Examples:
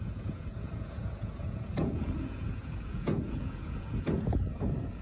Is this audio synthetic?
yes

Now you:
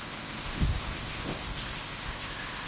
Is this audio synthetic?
yes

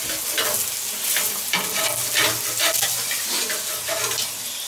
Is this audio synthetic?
no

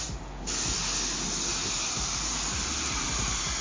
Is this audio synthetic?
no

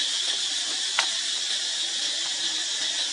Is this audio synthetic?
yes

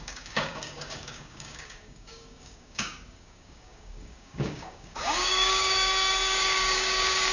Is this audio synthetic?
yes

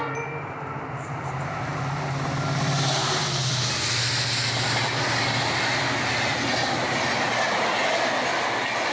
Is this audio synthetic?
no